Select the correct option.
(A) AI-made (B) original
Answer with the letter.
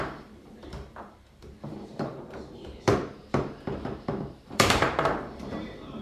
A